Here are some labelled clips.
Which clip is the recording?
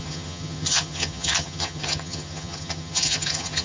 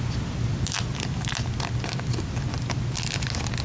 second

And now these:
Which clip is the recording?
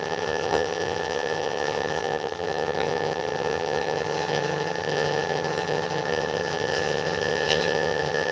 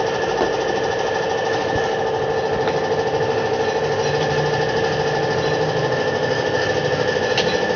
second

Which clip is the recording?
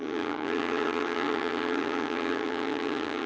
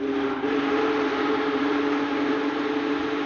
second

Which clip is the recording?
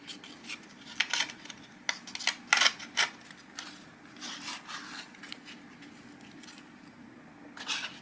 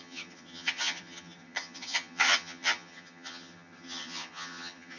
first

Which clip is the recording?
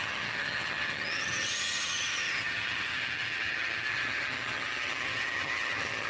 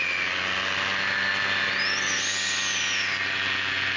second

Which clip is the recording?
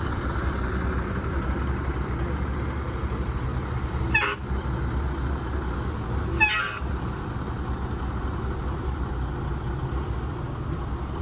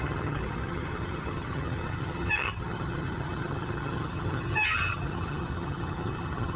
first